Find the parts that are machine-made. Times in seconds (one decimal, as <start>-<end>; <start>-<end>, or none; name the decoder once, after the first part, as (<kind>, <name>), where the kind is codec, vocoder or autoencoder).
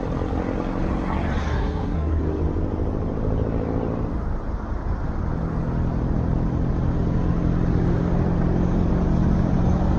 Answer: 1.4-2.2 (codec, SNAC)